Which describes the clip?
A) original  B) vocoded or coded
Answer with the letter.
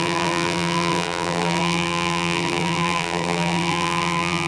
B